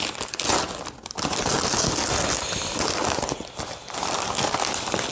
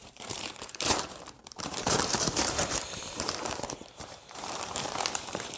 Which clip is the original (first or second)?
first